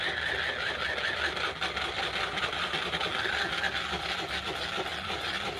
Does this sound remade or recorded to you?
recorded